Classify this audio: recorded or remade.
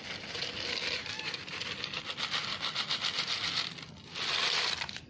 recorded